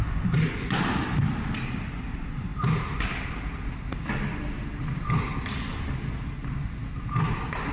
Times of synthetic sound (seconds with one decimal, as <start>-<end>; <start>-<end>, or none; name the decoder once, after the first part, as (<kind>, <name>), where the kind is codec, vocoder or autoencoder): none